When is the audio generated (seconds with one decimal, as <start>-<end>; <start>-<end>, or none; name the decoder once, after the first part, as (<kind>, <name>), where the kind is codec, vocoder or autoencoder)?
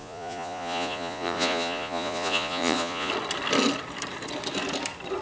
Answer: 0.0-3.1 (vocoder, Vocos)